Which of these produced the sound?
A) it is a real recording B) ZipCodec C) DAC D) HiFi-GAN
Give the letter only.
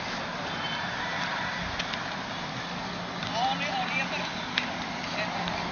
A